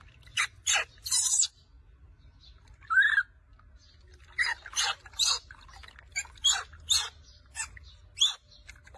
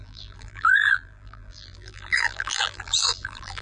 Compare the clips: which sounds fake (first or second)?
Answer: second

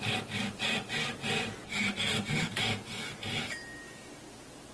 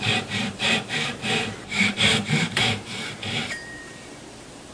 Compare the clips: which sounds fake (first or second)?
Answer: second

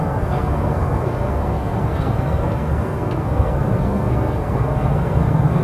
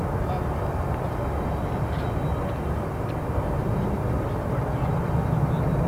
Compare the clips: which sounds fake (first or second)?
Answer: first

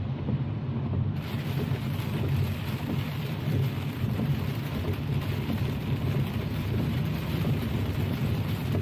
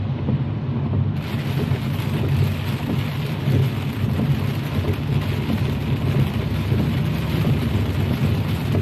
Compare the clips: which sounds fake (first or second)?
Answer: first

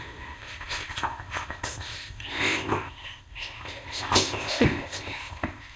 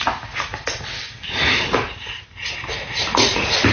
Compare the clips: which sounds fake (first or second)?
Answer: first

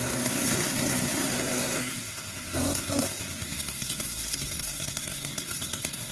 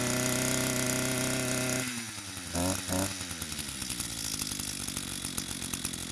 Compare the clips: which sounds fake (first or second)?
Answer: first